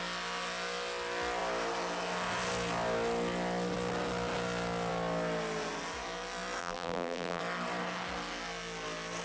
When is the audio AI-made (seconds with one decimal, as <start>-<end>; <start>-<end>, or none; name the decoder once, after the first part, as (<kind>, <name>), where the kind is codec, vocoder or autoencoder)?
6.6-7.4 (vocoder, BigVGAN v2)